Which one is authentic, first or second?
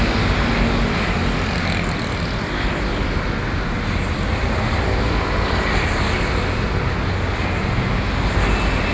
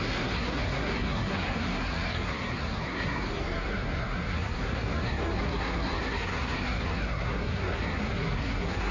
first